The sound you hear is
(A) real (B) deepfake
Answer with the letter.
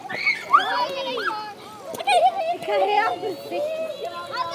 A